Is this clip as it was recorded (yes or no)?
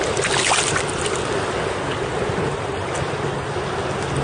yes